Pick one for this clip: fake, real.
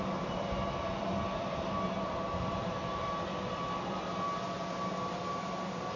real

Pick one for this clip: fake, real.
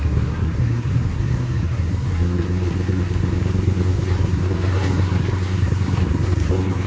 fake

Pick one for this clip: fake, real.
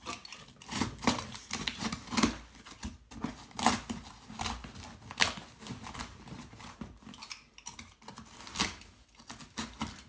real